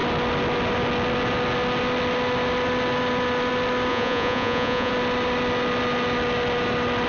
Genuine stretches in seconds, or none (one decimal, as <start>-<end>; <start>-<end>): 0.0-3.9; 4.9-7.1